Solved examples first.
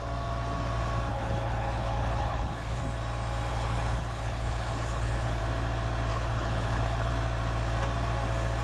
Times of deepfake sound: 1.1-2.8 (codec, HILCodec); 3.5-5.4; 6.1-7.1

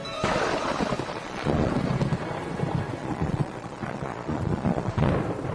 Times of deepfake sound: 1.1-1.7 (vocoder, Vocos); 3.0-5.1

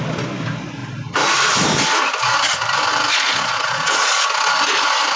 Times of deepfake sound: 3.1-4.3 (vocoder, Vocos)

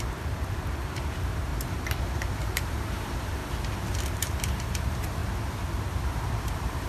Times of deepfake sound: 0.0-1.5 (vocoder, BigVGAN v2); 2.4-3.4; 4.1-5.2; 6.1-6.9

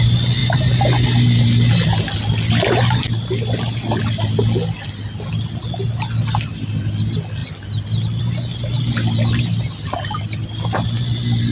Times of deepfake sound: 0.4-4.4 (vocoder, BigVGAN v2)